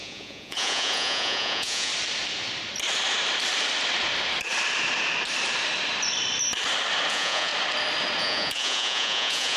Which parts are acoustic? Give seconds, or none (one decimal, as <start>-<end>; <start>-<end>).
1.9-7.1; 7.5-8.2

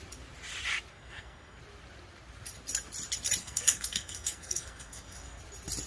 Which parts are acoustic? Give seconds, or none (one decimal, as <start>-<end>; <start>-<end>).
0.0-0.9; 1.6-3.4; 5.4-5.9